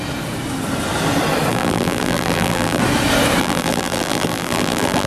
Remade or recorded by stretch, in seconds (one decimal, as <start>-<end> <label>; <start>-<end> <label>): 0.0-1.5 recorded; 1.5-2.8 remade; 2.8-3.4 recorded; 3.4-5.1 remade